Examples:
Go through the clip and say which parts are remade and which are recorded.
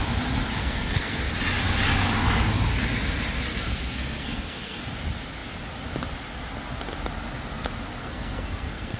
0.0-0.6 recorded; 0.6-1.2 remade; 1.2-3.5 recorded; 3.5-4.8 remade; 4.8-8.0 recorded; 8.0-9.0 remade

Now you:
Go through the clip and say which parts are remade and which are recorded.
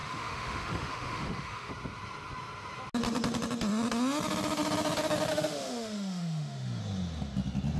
0.0-1.7 remade; 1.7-5.3 recorded; 5.3-6.8 remade; 6.8-7.8 recorded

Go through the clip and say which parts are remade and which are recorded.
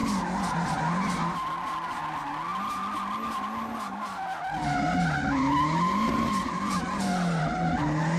0.0-8.2 recorded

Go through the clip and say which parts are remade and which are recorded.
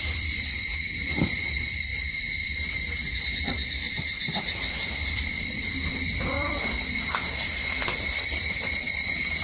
0.0-9.4 remade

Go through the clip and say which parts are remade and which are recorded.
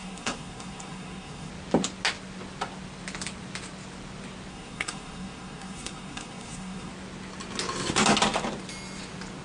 0.0-1.5 remade; 1.5-4.5 recorded; 4.5-6.9 remade; 6.9-9.4 recorded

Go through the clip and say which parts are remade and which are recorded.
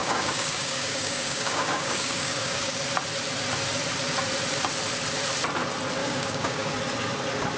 0.0-2.8 remade; 2.8-6.0 recorded; 6.0-6.7 remade; 6.7-7.6 recorded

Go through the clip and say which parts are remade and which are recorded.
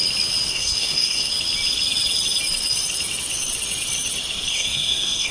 0.0-0.5 recorded; 0.5-1.3 remade; 1.3-4.5 recorded; 4.5-5.3 remade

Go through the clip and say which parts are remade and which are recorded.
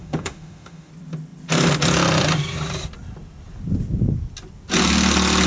0.0-0.9 remade; 0.9-5.5 recorded